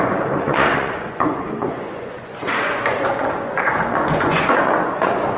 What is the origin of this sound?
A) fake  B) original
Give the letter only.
A